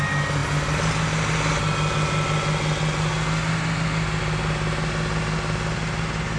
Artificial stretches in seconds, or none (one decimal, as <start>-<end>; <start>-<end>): none